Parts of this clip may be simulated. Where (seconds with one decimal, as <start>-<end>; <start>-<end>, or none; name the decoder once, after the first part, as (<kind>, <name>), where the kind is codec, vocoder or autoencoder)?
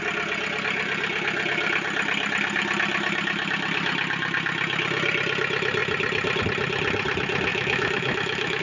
7.5-8.6 (autoencoder, DAC-VAE)